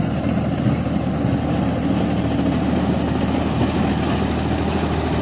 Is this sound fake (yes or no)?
no